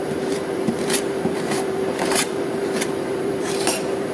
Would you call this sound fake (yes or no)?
yes